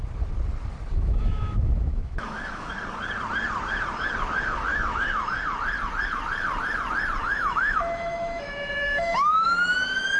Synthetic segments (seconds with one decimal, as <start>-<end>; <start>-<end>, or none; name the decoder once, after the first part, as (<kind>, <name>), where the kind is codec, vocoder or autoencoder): 0.9-2.7 (autoencoder, DAC-VAE); 4.7-5.4; 7.2-10.2